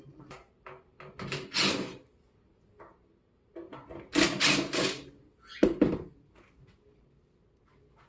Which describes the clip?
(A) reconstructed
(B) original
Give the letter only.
B